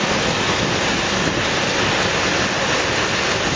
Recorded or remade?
recorded